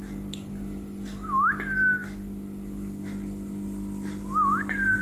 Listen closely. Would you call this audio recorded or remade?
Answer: recorded